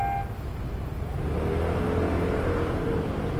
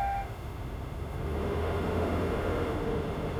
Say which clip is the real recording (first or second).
first